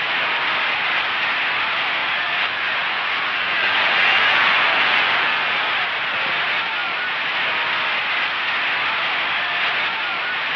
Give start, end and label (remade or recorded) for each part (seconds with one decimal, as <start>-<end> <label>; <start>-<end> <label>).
0.0-2.0 recorded; 2.0-5.6 remade; 5.6-10.6 recorded